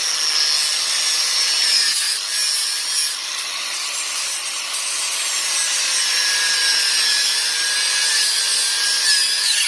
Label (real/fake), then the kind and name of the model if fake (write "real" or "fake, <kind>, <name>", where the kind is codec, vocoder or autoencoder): real